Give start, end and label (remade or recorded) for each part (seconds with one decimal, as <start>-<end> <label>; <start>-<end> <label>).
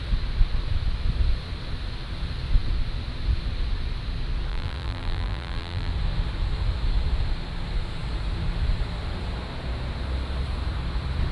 0.0-4.5 recorded; 4.5-5.9 remade; 5.9-11.3 recorded